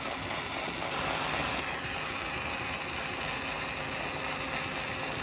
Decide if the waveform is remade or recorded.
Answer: recorded